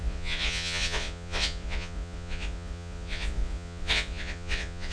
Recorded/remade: remade